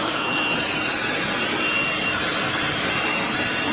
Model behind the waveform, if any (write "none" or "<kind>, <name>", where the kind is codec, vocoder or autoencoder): none